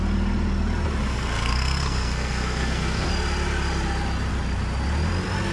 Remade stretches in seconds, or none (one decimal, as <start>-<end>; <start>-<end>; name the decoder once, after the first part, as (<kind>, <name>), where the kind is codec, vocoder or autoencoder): 1.1-3.1 (codec, SNAC)